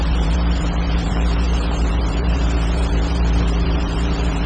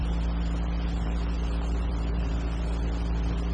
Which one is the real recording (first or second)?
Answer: second